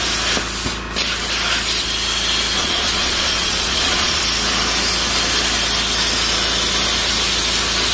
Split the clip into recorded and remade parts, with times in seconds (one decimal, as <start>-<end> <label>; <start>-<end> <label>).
0.0-2.6 recorded; 2.6-4.2 remade; 4.2-7.9 recorded